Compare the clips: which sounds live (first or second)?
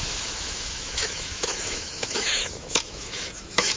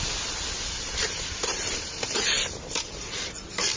second